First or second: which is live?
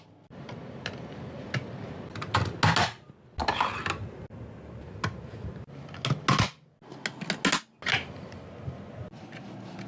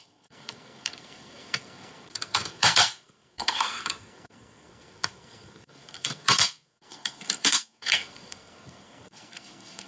first